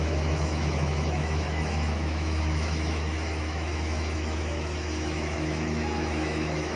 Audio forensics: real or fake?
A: fake